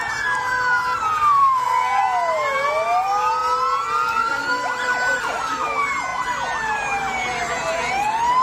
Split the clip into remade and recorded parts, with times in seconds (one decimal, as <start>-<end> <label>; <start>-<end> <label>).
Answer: 0.0-1.4 recorded; 1.4-2.0 remade; 2.0-8.4 recorded